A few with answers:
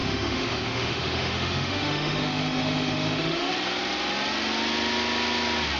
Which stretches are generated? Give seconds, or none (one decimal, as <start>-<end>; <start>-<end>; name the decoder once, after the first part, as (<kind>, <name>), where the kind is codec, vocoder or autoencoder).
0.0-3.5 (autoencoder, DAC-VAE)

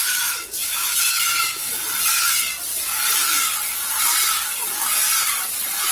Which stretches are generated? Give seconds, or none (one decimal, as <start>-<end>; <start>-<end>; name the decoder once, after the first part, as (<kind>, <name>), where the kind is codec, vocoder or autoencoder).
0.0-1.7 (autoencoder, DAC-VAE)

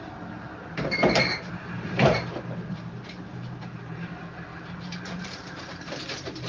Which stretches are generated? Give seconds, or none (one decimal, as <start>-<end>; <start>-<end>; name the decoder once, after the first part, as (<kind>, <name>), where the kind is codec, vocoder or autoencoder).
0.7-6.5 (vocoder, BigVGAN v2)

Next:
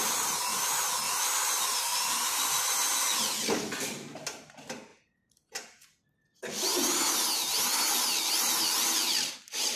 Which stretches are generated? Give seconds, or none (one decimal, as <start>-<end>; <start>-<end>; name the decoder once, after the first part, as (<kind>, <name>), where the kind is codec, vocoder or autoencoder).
0.0-0.5 (vocoder, BigVGAN v2); 3.8-4.9; 9.3-9.8

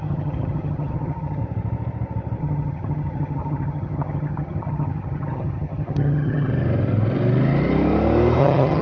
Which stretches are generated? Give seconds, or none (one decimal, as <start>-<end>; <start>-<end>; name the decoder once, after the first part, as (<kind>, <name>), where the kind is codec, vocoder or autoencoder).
0.0-1.4 (vocoder, HiFi-GAN); 2.4-6.5; 8.4-8.8

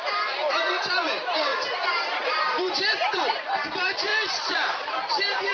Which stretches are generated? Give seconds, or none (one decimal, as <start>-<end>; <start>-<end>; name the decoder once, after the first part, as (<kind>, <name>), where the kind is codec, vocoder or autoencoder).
0.0-4.1 (vocoder, BigVGAN v2); 5.1-5.5

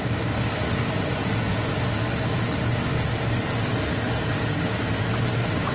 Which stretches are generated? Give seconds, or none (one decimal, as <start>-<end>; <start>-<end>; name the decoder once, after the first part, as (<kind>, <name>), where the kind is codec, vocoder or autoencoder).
1.2-1.7 (vocoder, Vocos); 4.2-4.8